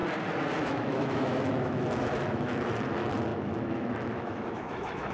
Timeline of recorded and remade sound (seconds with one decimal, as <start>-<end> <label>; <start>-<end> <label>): 0.0-0.6 recorded; 0.6-5.1 remade